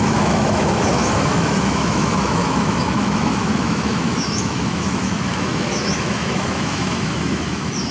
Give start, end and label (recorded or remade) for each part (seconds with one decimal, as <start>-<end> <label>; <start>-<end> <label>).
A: 0.0-7.9 remade